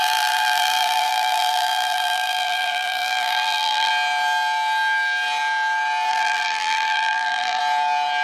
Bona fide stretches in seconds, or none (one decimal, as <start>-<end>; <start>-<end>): 3.9-6.1; 7.6-8.2